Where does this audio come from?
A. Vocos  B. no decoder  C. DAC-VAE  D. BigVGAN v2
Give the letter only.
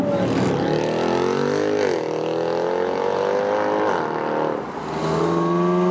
B